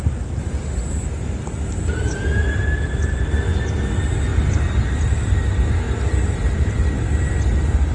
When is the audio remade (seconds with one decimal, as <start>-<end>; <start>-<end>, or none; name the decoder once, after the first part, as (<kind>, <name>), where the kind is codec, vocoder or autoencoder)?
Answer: 4.3-4.8 (vocoder, BigVGAN v2)